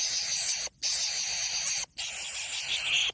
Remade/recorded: recorded